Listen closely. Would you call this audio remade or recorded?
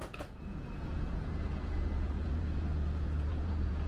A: remade